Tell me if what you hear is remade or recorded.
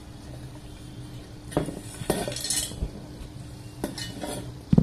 recorded